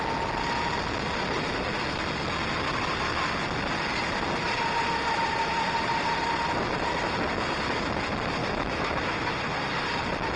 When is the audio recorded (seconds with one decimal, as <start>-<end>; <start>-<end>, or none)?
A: 0.0-8.4; 9.1-10.4